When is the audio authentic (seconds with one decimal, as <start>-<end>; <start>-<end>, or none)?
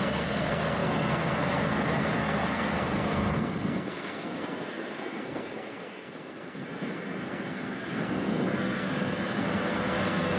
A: none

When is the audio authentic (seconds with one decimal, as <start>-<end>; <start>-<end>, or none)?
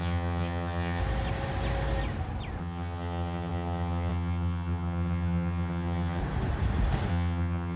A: 1.0-2.6; 6.2-7.1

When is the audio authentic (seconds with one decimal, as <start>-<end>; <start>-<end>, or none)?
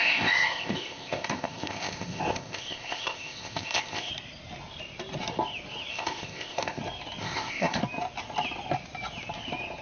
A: 4.1-5.9; 6.8-7.2; 7.8-9.8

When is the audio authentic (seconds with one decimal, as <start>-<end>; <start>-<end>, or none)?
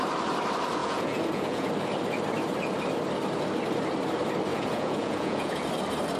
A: 0.0-0.8; 1.7-4.5; 5.7-6.2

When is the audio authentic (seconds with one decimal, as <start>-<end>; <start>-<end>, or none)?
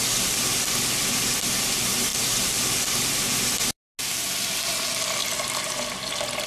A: 0.0-6.5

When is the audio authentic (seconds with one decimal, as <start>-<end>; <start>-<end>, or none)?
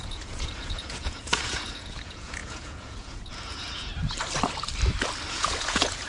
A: 3.9-5.3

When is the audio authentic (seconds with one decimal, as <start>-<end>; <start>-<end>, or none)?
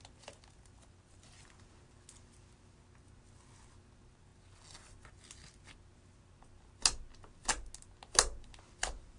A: 0.0-9.2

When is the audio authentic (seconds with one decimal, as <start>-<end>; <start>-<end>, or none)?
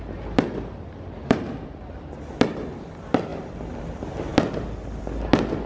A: 0.0-5.7